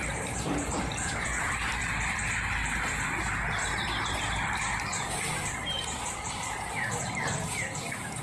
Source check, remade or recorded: remade